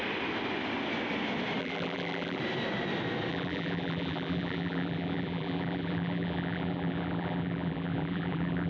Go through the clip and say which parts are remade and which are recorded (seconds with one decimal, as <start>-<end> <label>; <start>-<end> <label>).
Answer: 0.0-1.6 recorded; 1.6-2.4 remade; 2.4-3.3 recorded; 3.3-8.7 remade